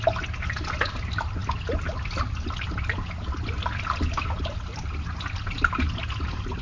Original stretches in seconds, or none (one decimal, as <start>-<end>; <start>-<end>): 0.0-6.6

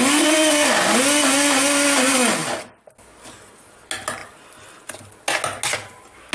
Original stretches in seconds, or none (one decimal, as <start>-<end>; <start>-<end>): 0.0-6.3

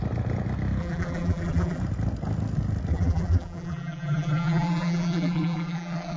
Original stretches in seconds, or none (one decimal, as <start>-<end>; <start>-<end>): 0.0-0.8; 1.8-2.9

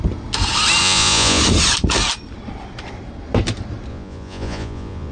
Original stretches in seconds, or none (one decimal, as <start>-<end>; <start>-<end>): 0.0-0.8; 1.4-3.9

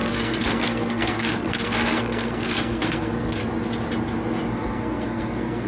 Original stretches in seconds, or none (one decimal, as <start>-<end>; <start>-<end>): 3.4-4.5

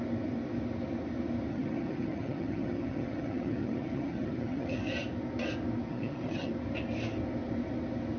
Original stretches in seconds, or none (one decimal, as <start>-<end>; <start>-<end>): 0.0-1.5; 4.9-5.9; 6.5-8.2